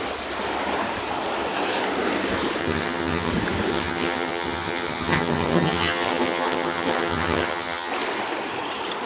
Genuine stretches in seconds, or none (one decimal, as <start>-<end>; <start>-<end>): 0.0-2.6; 3.3-3.7; 7.9-9.1